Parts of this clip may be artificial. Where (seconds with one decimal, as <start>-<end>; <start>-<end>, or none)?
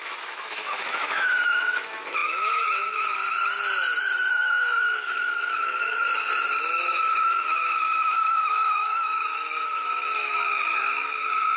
0.0-3.2; 4.3-6.1; 6.6-11.6